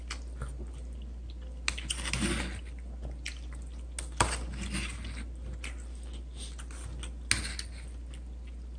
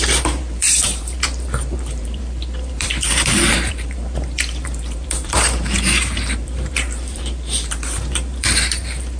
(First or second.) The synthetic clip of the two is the second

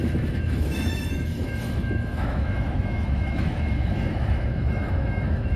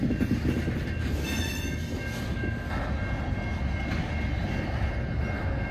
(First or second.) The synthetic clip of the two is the first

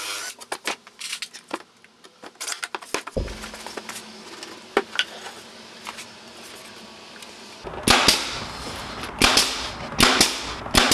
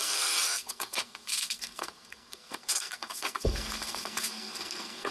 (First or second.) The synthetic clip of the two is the second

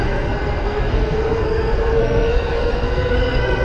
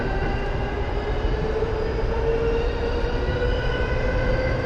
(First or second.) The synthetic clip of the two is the first